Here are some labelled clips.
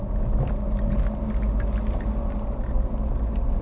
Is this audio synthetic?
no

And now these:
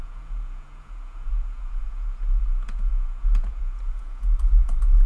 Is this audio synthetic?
yes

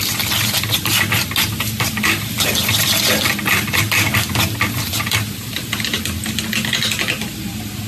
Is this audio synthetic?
no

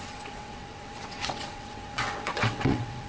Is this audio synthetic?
yes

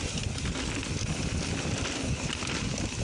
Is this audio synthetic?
no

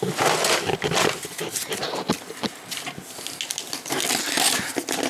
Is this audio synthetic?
no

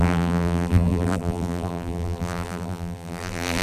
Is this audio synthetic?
yes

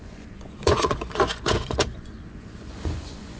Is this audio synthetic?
yes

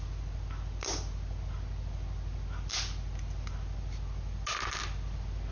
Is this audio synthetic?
no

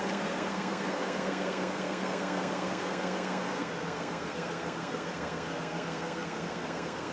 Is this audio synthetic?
yes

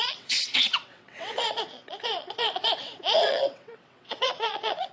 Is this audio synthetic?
yes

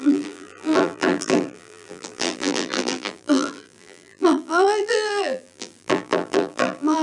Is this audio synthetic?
yes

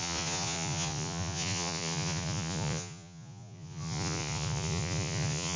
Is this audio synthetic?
yes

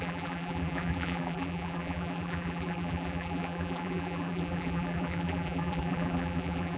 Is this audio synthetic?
yes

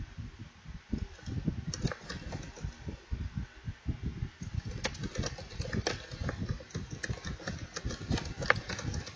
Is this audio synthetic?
no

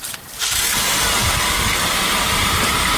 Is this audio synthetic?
no